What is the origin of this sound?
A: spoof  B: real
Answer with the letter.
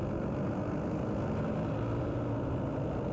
B